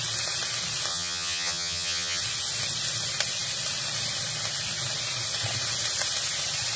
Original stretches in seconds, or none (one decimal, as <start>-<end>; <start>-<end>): 0.0-0.9; 2.2-6.8